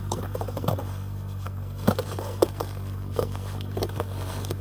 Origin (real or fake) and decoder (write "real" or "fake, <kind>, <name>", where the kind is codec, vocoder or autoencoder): fake, codec, SNAC